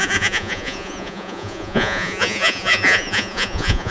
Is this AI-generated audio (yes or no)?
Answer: yes